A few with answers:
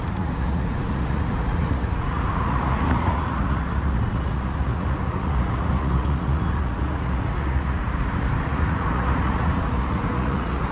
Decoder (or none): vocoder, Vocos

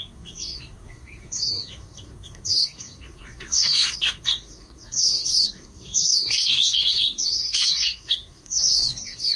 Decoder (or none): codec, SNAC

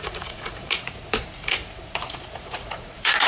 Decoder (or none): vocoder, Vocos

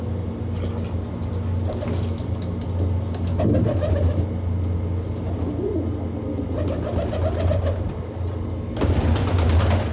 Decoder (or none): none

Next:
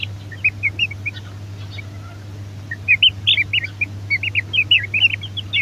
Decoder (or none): none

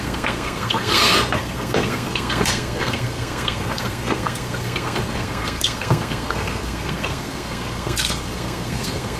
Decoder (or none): codec, SNAC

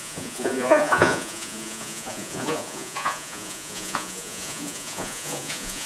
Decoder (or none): vocoder, Vocos